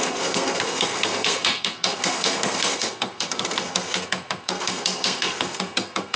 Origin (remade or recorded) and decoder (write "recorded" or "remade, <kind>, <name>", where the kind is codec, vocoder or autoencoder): remade, codec, SNAC